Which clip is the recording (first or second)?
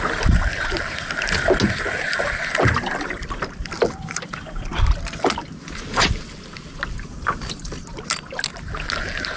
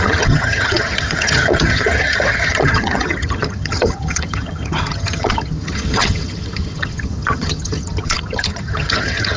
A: first